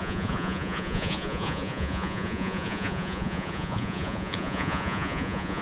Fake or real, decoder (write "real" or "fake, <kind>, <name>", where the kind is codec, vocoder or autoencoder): fake, vocoder, Vocos